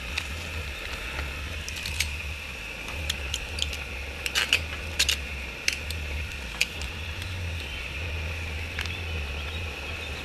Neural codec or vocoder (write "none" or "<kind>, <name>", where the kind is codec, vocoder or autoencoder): none